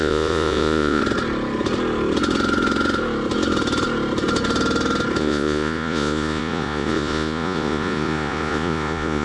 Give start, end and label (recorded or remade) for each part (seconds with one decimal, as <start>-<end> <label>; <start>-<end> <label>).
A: 0.0-1.0 remade; 1.0-5.2 recorded; 5.2-9.2 remade